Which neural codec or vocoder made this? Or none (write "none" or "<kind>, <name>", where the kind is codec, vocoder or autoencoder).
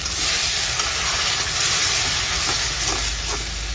none